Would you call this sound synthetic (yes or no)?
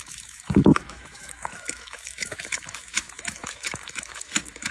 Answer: yes